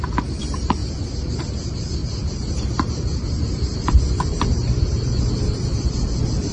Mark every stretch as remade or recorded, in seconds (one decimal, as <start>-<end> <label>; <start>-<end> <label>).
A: 0.0-0.8 remade; 0.8-1.4 recorded; 1.4-6.5 remade